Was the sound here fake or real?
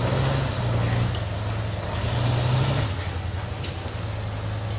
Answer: real